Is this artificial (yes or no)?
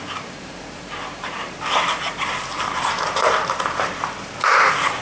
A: yes